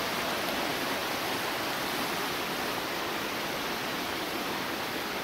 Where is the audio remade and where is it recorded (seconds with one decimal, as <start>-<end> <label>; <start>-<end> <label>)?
0.0-5.2 recorded